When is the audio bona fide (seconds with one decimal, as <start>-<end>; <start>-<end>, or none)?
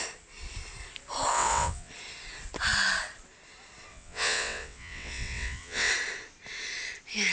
0.0-1.3; 1.9-3.9; 5.9-7.3